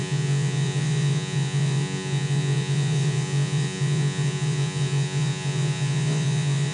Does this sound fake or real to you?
fake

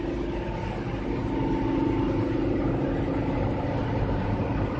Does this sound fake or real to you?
real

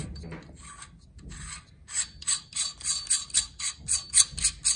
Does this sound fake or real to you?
real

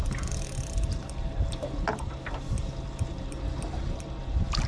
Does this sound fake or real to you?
real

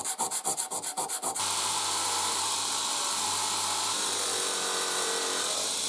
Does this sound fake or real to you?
fake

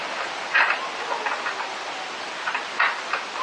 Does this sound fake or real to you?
real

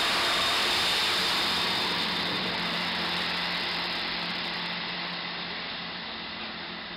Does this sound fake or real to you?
fake